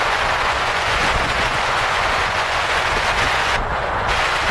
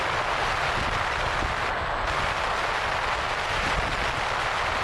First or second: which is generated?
first